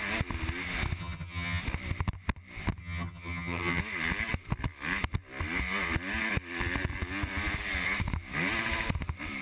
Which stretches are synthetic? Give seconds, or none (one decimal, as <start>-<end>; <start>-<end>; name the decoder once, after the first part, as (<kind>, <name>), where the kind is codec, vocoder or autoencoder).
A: 1.0-1.6 (vocoder, HiFi-GAN); 2.8-3.8